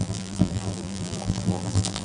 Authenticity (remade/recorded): remade